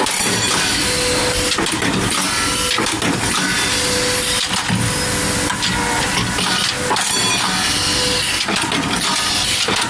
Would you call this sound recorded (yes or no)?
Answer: yes